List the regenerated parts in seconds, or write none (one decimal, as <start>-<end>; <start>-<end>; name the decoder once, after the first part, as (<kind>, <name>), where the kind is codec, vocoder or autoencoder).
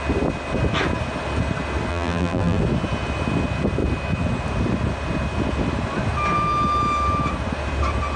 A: 1.9-2.6 (vocoder, BigVGAN v2)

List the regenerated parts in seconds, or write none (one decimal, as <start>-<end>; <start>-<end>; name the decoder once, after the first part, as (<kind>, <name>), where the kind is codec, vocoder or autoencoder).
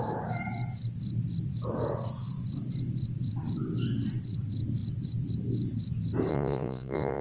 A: 6.3-7.2 (vocoder, Vocos)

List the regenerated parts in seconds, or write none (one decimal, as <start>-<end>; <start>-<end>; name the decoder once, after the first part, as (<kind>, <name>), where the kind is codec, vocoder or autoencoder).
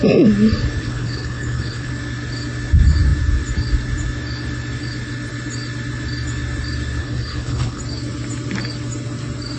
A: 0.8-1.9 (codec, HILCodec); 7.0-7.8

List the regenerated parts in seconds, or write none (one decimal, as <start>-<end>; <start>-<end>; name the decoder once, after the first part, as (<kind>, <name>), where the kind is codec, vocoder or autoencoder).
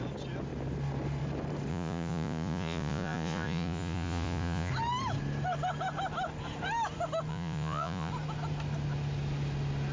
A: 1.7-4.7 (vocoder, Vocos); 7.3-8.1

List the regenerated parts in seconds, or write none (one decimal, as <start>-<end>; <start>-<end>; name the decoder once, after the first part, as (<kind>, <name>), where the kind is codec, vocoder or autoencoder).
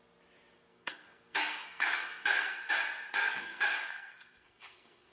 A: 0.7-2.7 (codec, SNAC); 3.1-5.1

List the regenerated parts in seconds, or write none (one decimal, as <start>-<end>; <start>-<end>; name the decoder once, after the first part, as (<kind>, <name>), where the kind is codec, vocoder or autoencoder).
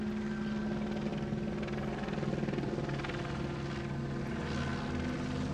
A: none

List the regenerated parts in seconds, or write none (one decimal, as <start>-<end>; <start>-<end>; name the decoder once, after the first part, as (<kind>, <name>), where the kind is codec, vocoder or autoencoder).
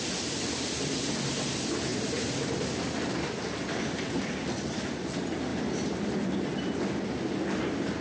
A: 1.9-2.7 (vocoder, BigVGAN v2); 5.5-6.2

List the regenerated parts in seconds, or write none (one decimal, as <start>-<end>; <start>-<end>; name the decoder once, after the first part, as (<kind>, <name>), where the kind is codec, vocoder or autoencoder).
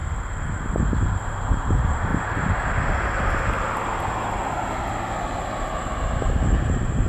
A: 0.0-2.1 (vocoder, BigVGAN v2); 6.4-7.1